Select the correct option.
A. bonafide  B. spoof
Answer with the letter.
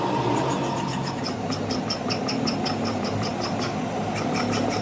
A